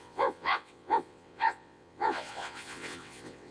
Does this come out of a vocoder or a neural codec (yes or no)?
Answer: yes